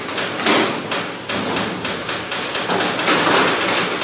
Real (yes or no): yes